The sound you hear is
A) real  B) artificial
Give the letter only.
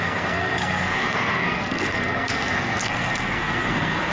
B